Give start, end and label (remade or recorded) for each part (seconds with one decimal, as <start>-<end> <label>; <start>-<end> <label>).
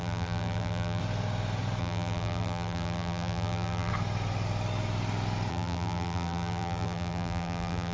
0.0-1.0 remade; 1.0-1.8 recorded; 1.8-3.9 remade; 3.9-5.5 recorded; 5.5-7.9 remade